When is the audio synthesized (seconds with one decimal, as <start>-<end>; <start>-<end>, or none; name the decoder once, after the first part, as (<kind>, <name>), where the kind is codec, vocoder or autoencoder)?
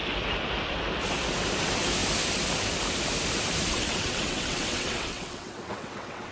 3.7-6.3 (vocoder, WaveNeXt)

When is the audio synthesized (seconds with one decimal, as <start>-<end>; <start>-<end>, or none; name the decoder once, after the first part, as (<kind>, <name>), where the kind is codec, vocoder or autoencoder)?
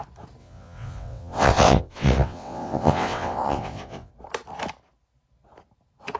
0.4-4.1 (vocoder, WaveNeXt)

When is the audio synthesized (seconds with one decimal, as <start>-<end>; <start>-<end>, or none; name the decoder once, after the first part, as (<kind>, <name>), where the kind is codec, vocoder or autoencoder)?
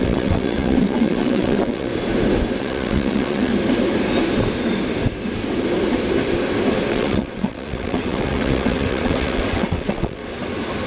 0.0-1.9 (vocoder, WaveNeXt); 2.6-3.5; 6.9-10.2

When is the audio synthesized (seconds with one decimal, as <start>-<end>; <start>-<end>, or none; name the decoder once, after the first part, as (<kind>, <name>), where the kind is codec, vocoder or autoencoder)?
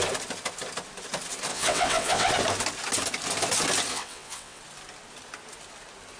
1.5-2.3 (vocoder, WaveNeXt); 3.9-4.6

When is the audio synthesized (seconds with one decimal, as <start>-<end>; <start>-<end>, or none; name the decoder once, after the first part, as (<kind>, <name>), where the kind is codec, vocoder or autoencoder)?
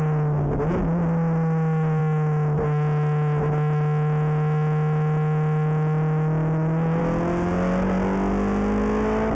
none